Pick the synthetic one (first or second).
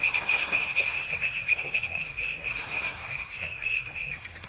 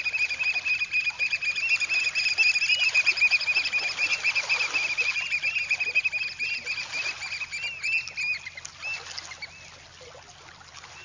first